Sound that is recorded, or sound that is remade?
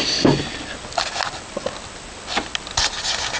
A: recorded